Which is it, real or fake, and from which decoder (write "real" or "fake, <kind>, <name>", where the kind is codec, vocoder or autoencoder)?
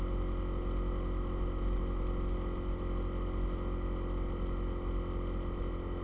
real